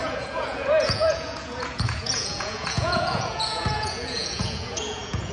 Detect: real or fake fake